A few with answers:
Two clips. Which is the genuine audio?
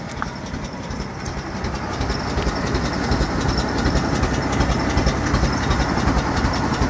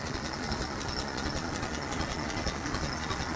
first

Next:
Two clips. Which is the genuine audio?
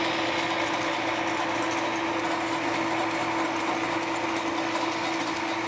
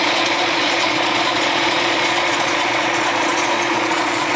first